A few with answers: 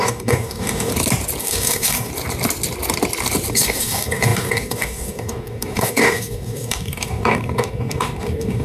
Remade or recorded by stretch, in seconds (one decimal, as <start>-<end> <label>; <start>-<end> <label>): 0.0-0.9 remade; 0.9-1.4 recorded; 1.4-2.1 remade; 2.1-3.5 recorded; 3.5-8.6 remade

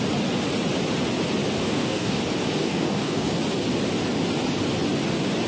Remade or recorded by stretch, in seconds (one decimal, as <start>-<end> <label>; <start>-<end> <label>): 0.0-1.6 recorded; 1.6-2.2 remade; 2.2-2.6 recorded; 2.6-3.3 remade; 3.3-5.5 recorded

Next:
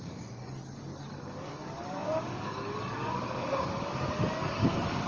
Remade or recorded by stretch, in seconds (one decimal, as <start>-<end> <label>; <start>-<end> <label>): 0.0-5.1 remade

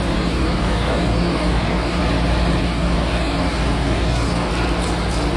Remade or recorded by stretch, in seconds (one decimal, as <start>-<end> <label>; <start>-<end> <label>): 0.0-2.0 remade; 2.0-2.6 recorded; 2.6-4.5 remade; 4.5-5.4 recorded

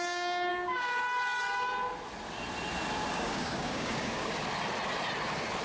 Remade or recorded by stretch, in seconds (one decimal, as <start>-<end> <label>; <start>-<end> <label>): 0.0-0.5 recorded; 0.5-1.0 remade; 1.0-3.1 recorded; 3.1-4.3 remade; 4.3-5.6 recorded

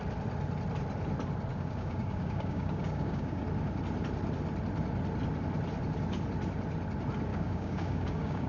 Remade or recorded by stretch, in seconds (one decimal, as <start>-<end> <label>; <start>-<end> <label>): 0.0-1.5 recorded; 1.5-3.4 remade; 3.4-7.3 recorded; 7.3-8.5 remade

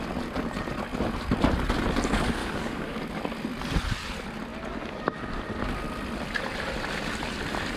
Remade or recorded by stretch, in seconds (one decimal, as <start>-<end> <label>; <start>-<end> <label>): 0.0-2.4 recorded; 2.4-3.1 remade; 3.1-7.8 recorded